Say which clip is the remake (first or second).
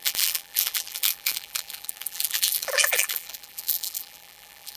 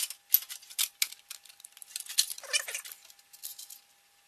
first